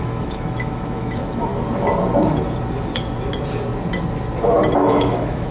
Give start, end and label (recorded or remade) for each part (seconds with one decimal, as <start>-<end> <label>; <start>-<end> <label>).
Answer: 0.0-1.5 remade; 1.5-4.8 recorded; 4.8-5.5 remade